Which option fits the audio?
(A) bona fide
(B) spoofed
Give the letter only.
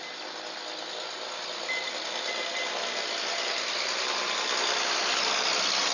A